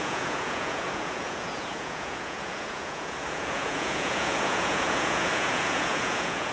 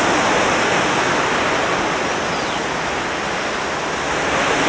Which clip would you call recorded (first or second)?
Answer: second